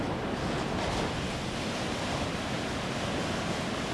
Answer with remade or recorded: recorded